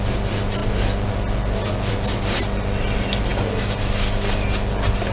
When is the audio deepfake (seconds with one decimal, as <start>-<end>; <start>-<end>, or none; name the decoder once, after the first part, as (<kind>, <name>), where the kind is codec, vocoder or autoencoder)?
none